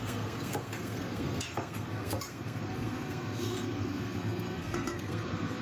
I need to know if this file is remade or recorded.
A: remade